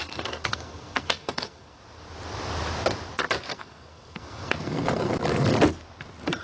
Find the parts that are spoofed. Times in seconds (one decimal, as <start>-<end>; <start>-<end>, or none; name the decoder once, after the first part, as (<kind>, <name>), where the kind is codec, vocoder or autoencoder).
0.0-1.8 (codec, SNAC); 3.5-5.1